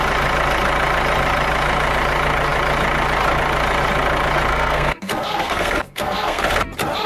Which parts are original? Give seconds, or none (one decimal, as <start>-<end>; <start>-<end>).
0.0-4.5; 6.4-7.1